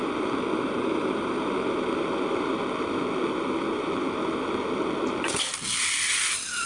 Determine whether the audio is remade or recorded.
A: recorded